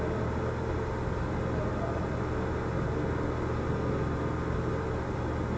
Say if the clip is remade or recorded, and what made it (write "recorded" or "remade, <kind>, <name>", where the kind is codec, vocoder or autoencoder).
recorded